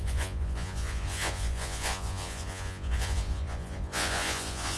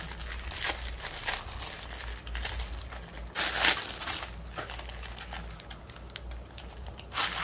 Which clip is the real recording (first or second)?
second